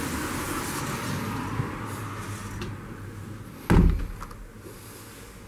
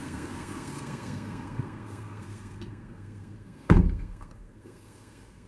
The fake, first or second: second